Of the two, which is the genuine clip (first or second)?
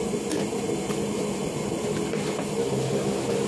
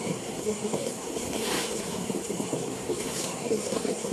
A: first